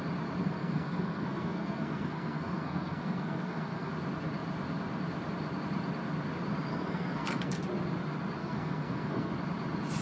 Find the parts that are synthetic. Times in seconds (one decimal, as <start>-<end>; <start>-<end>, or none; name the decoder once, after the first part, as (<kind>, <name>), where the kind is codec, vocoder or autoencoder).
0.4-3.9 (codec, SNAC); 6.7-7.6; 8.4-9.3